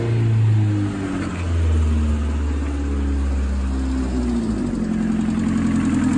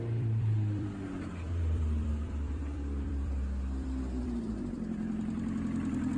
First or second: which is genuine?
first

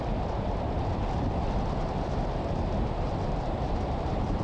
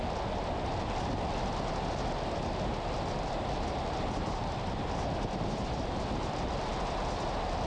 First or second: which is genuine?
second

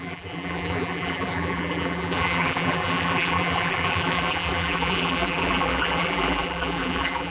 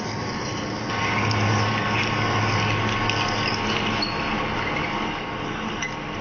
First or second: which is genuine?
second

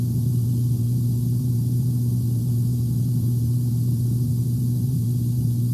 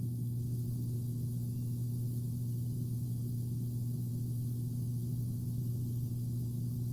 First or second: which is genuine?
second